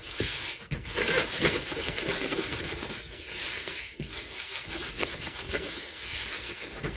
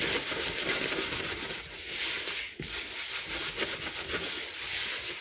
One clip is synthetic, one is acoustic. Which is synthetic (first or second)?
first